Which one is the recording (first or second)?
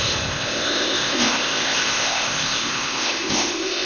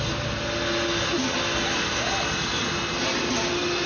second